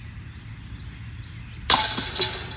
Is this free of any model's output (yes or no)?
yes